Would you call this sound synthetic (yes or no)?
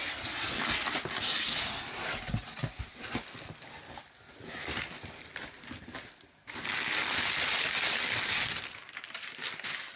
no